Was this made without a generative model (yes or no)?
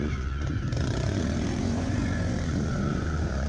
no